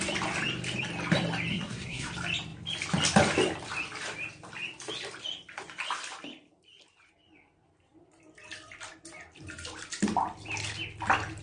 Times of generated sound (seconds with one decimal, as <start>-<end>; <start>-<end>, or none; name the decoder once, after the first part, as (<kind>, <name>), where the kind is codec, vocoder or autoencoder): 1.5-2.1 (codec, SNAC)